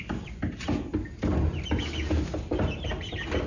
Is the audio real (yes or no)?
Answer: yes